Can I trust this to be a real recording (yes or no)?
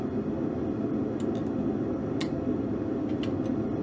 yes